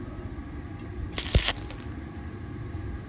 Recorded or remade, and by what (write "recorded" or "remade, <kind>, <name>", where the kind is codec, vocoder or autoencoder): recorded